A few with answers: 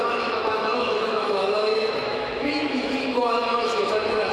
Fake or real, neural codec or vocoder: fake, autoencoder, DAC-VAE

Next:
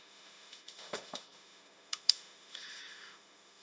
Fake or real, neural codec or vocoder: fake, autoencoder, DAC-VAE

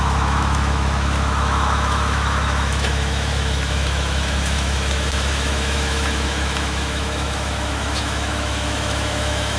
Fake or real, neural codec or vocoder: fake, autoencoder, DAC-VAE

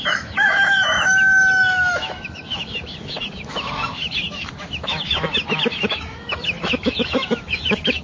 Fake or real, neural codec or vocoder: fake, autoencoder, DAC-VAE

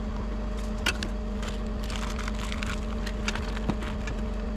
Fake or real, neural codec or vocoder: real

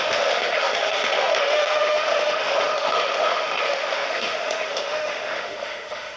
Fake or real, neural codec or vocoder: fake, autoencoder, DAC-VAE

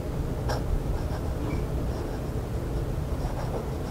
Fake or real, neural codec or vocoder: real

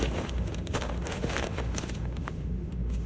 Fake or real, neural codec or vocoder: fake, autoencoder, DAC-VAE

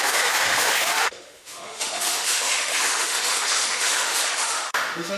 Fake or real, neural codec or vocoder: fake, autoencoder, DAC-VAE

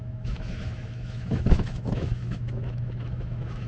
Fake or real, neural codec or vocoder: fake, autoencoder, DAC-VAE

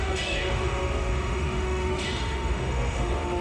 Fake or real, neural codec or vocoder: fake, autoencoder, DAC-VAE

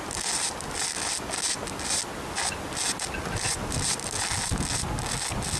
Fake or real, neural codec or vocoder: real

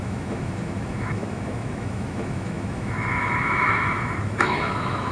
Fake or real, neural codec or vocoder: fake, autoencoder, DAC-VAE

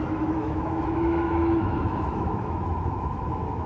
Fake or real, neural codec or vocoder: fake, autoencoder, DAC-VAE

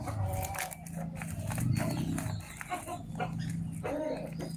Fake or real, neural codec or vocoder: real